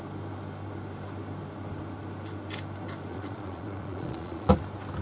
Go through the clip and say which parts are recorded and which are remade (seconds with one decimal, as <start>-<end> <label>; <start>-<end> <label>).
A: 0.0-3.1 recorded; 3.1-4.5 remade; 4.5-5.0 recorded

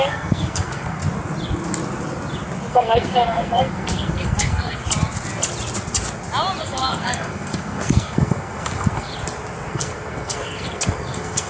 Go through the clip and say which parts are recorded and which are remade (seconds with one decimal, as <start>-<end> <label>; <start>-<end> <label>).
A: 0.0-1.0 remade; 1.0-2.7 recorded; 2.7-4.8 remade; 4.8-6.6 recorded; 6.6-9.1 remade; 9.1-9.7 recorded; 9.7-11.5 remade

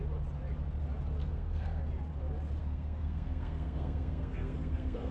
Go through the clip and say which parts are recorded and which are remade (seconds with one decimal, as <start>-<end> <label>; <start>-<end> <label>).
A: 0.0-1.2 recorded; 1.2-1.9 remade; 1.9-2.6 recorded; 2.6-5.1 remade

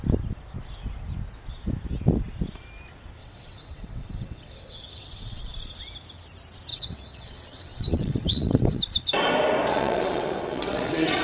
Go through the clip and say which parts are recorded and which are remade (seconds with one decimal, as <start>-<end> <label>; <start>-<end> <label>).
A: 0.0-3.2 recorded; 3.2-5.5 remade; 5.5-6.7 recorded; 6.7-8.8 remade; 8.8-9.7 recorded; 9.7-11.2 remade